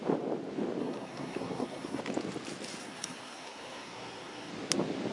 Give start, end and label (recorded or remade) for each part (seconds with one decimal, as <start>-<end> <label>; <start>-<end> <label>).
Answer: 0.0-0.8 recorded; 0.8-2.0 remade; 2.0-2.8 recorded; 2.8-4.5 remade; 4.5-5.1 recorded